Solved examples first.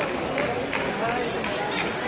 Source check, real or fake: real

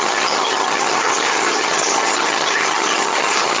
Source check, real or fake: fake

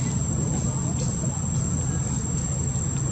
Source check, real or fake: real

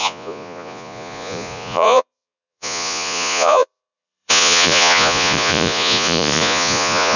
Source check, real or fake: fake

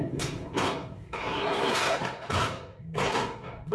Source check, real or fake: fake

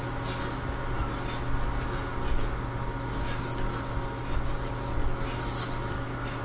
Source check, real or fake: real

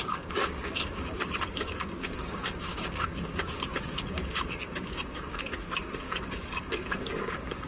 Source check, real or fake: fake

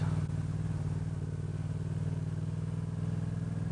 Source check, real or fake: real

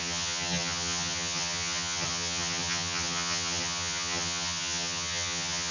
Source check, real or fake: fake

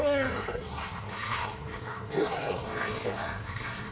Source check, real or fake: fake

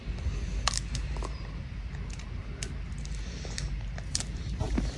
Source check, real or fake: real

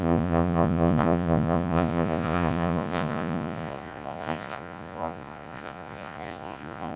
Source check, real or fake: fake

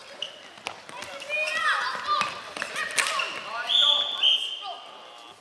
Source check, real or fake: real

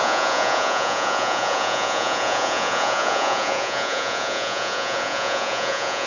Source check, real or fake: fake